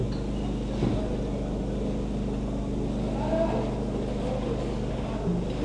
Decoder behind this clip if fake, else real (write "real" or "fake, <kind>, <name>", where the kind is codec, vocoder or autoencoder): real